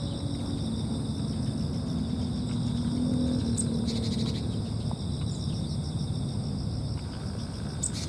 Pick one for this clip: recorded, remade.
recorded